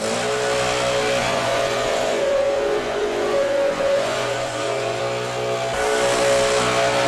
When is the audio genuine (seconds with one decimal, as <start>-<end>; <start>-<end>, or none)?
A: 0.0-1.2; 5.0-7.1